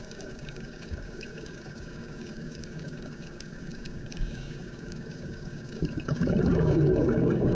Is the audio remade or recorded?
remade